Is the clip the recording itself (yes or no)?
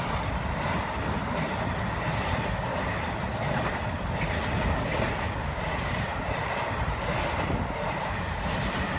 yes